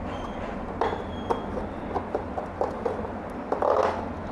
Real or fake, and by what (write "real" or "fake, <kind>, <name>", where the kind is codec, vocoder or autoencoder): real